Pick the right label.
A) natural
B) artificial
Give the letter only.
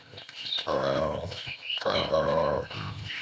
B